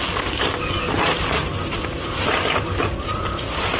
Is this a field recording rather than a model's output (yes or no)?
yes